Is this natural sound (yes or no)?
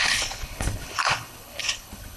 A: no